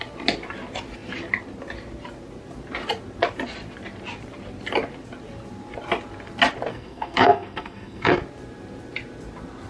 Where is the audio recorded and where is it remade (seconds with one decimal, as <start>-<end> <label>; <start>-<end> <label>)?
0.0-6.7 recorded; 6.7-8.2 remade; 8.2-9.7 recorded